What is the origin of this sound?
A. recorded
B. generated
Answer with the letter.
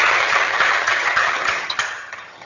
B